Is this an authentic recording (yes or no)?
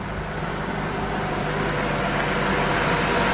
yes